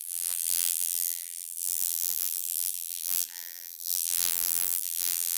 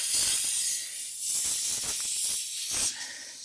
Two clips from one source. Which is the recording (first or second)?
second